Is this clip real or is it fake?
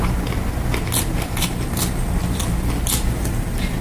real